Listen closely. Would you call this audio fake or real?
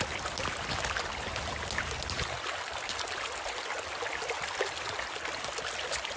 real